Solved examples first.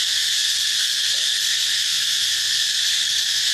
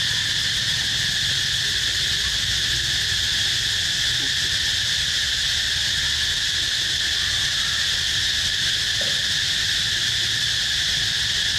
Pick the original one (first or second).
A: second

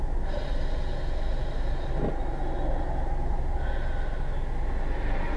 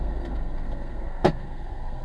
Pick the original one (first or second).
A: first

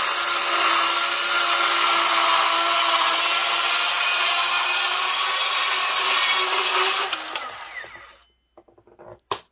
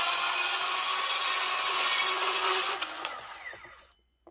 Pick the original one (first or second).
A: first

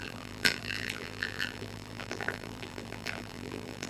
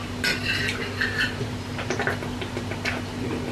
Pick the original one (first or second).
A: second